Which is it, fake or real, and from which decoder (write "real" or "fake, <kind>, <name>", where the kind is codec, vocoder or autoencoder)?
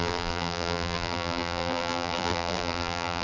fake, vocoder, BigVGAN v2